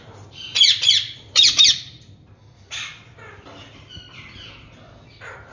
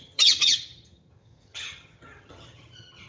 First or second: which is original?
first